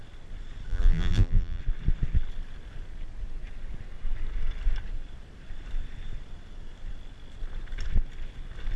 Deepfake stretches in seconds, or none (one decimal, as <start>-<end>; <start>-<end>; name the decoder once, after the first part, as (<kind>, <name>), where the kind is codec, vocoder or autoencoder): 0.7-1.6 (vocoder, BigVGAN v2)